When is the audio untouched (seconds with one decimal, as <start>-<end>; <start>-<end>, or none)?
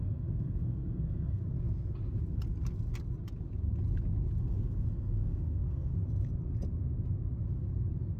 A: 1.4-4.4; 5.9-8.2